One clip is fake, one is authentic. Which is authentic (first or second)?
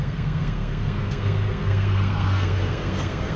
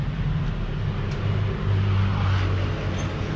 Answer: second